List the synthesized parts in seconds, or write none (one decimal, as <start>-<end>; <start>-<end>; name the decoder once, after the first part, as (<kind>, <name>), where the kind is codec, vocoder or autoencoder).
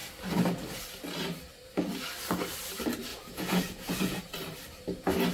3.1-4.2 (vocoder, Vocos)